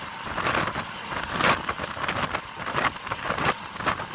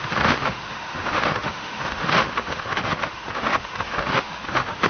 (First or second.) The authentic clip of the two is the first